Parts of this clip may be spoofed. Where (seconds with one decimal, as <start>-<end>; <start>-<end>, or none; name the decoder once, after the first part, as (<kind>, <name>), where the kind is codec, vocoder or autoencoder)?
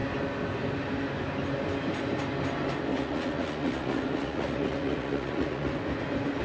2.9-5.7 (vocoder, Vocos)